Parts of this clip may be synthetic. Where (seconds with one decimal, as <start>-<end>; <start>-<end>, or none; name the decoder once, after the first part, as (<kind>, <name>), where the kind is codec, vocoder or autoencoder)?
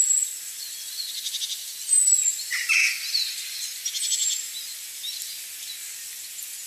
none